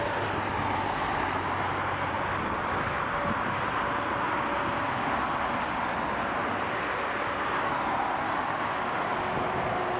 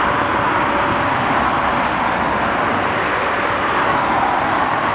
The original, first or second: first